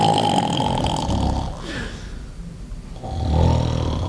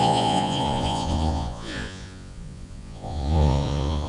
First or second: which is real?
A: first